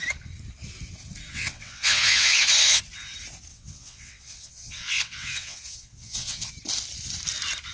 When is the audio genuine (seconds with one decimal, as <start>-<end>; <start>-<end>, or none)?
0.0-1.3; 2.8-3.5; 6.5-7.7